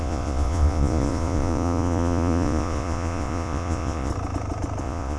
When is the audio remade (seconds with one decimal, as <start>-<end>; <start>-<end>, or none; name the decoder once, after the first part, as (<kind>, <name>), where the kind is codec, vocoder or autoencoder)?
0.0-4.1 (vocoder, Vocos); 4.8-5.2